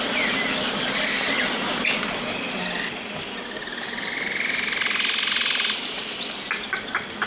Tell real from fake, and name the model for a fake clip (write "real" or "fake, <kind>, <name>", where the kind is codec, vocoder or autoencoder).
real